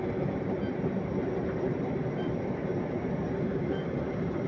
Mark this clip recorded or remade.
recorded